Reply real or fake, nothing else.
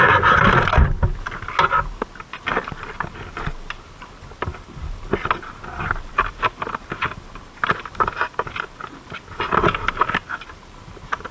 real